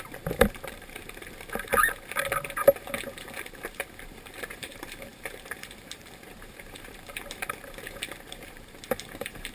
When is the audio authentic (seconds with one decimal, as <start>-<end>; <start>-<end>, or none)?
1.7-2.6